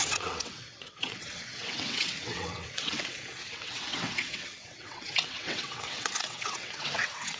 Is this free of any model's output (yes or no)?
no